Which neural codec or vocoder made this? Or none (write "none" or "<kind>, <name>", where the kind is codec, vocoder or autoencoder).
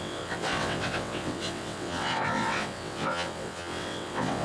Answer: vocoder, WaveNeXt